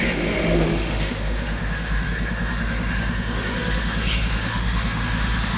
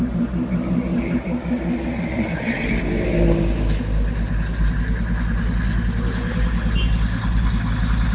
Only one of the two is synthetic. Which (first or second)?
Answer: first